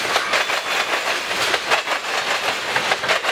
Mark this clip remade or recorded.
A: recorded